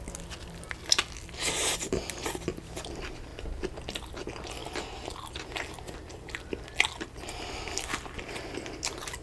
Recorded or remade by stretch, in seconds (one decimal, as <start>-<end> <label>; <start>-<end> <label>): 0.0-9.2 recorded